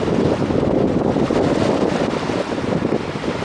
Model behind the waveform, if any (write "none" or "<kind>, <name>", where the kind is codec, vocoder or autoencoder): none